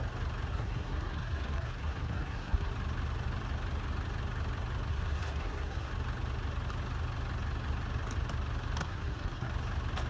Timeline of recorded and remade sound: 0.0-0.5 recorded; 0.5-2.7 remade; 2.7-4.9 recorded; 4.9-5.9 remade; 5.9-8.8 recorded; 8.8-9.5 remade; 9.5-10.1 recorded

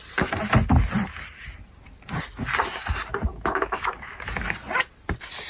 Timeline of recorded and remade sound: 0.0-3.3 recorded; 3.3-4.3 remade; 4.3-5.5 recorded

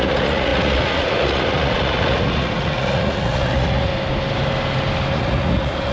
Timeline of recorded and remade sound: 0.0-3.9 remade; 3.9-5.1 recorded; 5.1-5.9 remade

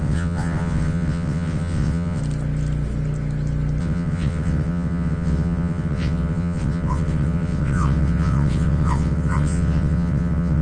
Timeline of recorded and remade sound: 0.0-2.2 remade; 2.2-3.8 recorded; 3.8-10.6 remade

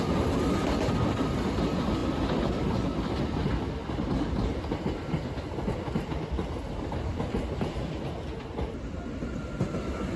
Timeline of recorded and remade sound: 0.0-10.2 recorded

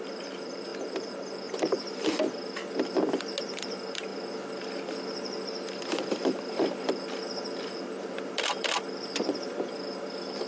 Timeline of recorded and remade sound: 0.0-10.5 recorded

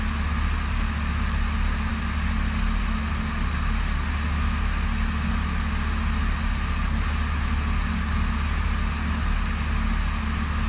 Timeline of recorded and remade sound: 0.0-10.7 recorded